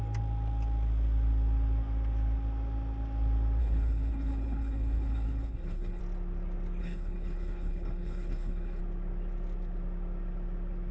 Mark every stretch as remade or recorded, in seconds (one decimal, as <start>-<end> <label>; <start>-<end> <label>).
0.0-3.6 recorded; 3.6-6.0 remade; 6.0-6.8 recorded; 6.8-8.8 remade; 8.8-10.9 recorded